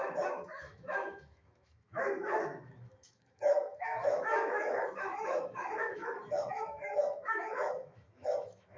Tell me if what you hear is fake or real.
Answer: fake